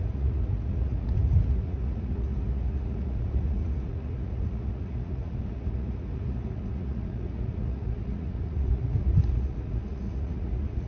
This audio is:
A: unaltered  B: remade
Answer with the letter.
B